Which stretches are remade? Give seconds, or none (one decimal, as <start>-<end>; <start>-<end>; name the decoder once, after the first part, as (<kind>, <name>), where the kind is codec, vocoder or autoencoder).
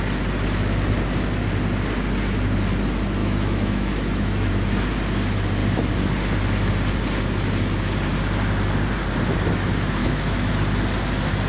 3.2-4.5 (autoencoder, DAC-VAE); 10.0-10.5